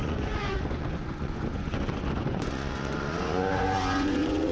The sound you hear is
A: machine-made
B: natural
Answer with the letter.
A